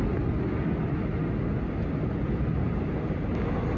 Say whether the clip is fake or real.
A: real